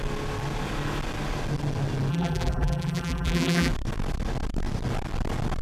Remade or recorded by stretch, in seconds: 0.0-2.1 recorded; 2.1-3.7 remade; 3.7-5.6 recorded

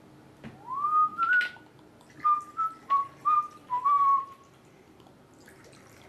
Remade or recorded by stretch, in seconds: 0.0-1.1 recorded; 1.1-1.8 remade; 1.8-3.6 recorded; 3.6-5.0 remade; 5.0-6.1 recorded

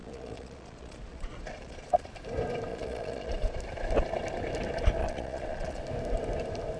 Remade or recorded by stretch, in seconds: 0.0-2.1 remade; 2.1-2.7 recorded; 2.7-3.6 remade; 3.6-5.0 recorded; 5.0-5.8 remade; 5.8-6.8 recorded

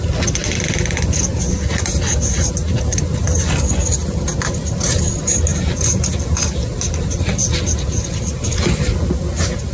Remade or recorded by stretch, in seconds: 0.0-9.7 recorded

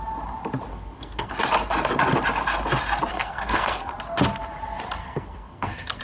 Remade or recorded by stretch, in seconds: 0.0-0.7 recorded; 0.7-1.3 remade; 1.3-3.1 recorded; 3.1-3.9 remade; 3.9-5.0 recorded; 5.0-6.0 remade

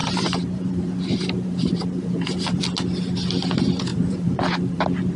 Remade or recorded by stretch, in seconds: 0.0-2.6 remade; 2.6-3.9 recorded; 3.9-4.8 remade; 4.8-5.2 recorded

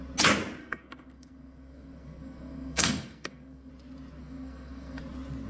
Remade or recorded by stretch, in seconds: 0.0-0.6 recorded; 0.6-3.7 remade; 3.7-4.2 recorded; 4.2-5.0 remade; 5.0-5.5 recorded

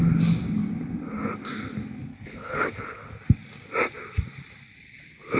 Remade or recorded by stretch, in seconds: 0.0-2.1 recorded; 2.1-3.1 remade; 3.1-5.4 recorded